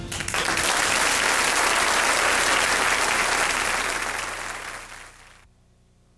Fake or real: real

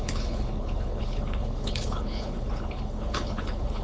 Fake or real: fake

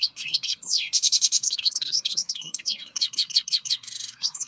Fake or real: fake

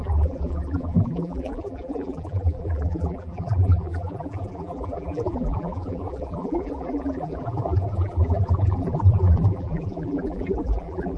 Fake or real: fake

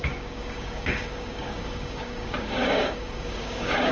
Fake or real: fake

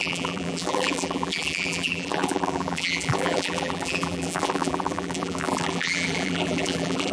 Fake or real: fake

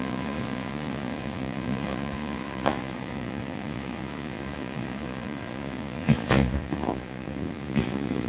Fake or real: fake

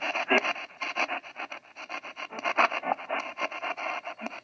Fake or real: real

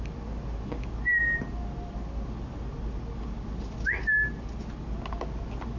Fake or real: real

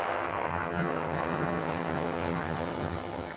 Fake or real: fake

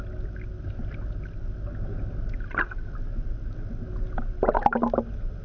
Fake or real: real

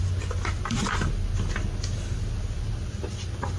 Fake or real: real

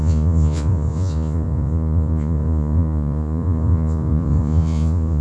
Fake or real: fake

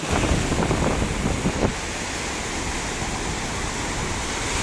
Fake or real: real